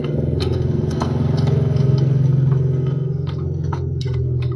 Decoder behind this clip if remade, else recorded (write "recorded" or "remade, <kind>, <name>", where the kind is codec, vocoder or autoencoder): remade, codec, SNAC